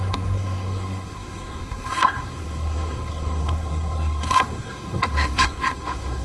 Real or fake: fake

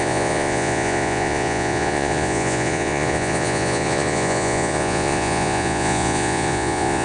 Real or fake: fake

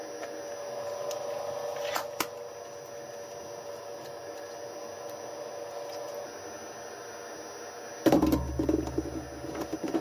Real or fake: real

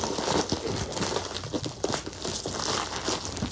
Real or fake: real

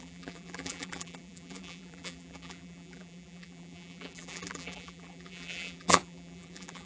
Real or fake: fake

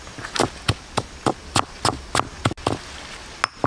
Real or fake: real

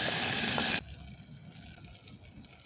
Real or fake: real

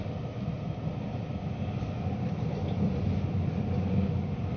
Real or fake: real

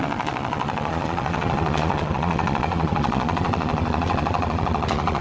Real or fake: fake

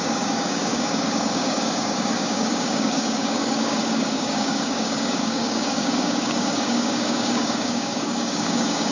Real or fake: fake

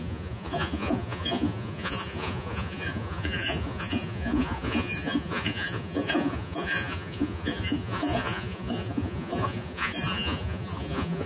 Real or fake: fake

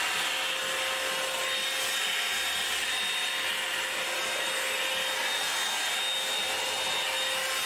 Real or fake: real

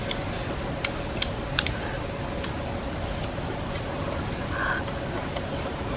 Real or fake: real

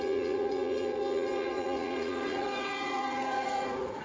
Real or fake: fake